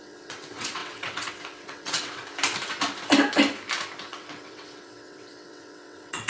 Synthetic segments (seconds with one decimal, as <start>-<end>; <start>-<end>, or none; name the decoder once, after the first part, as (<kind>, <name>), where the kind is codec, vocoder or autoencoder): 0.0-2.2 (vocoder, WaveNeXt); 4.1-6.3